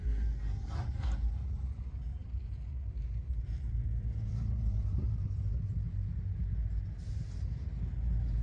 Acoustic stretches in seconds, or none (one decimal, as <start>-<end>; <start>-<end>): 0.0-2.1; 5.3-8.4

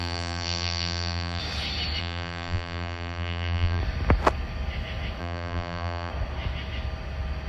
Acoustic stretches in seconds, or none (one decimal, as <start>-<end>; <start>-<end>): 1.4-2.0; 3.8-5.2; 6.1-7.5

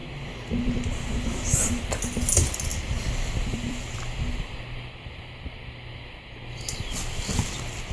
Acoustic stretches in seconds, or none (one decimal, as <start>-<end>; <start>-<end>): 1.9-2.7; 7.4-7.9

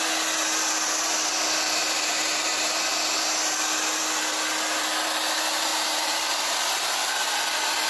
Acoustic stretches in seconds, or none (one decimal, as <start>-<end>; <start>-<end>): 0.0-1.8; 2.9-5.7; 7.1-7.9